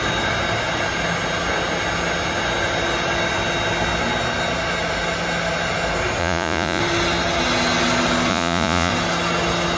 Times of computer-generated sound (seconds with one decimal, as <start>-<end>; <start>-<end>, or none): 6.2-6.8; 8.3-8.9